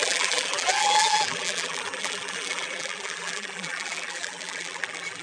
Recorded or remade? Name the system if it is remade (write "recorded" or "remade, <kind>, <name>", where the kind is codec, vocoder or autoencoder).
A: remade, vocoder, BigVGAN v2